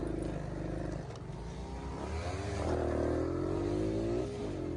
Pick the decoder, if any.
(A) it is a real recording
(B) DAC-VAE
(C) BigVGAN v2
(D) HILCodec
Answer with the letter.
A